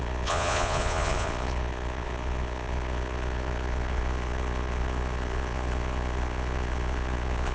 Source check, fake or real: fake